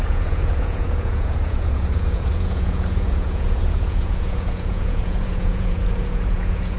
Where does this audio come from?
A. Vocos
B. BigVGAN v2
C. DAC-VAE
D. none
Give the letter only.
A